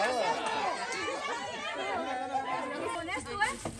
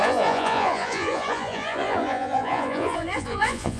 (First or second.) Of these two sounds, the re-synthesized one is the second